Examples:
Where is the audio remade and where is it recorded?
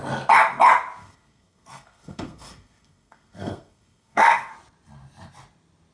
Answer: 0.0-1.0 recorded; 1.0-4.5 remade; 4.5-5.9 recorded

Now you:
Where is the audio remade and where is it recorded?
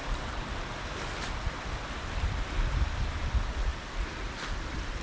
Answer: 0.0-3.0 remade; 3.0-5.0 recorded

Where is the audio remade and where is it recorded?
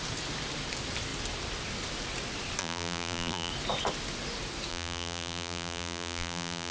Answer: 0.0-2.6 recorded; 2.6-3.5 remade; 3.5-4.7 recorded; 4.7-6.7 remade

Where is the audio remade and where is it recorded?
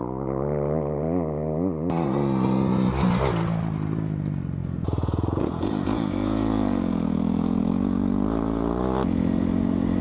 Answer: 0.0-4.6 recorded; 4.6-7.7 remade; 7.7-10.0 recorded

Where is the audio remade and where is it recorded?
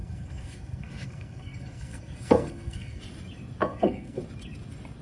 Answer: 0.0-3.0 remade; 3.0-3.6 recorded; 3.6-4.2 remade; 4.2-5.0 recorded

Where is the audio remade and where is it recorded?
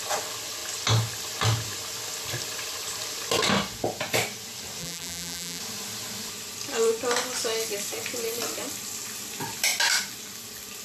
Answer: 0.0-4.8 recorded; 4.8-5.6 remade; 5.6-10.8 recorded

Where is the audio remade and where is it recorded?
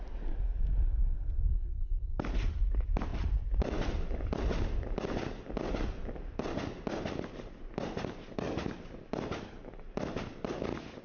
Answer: 0.0-11.0 recorded